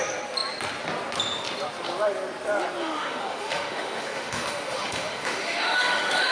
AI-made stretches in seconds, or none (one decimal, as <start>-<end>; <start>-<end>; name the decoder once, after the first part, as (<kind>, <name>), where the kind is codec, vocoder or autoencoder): 2.8-6.3 (autoencoder, DAC-VAE)